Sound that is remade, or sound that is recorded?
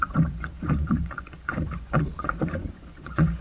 remade